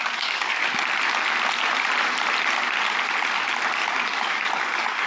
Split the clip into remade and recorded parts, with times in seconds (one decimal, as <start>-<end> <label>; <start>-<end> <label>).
0.0-0.6 remade; 0.6-3.7 recorded; 3.7-5.1 remade